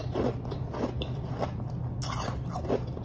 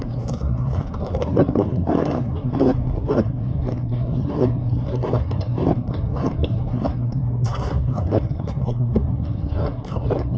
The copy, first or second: second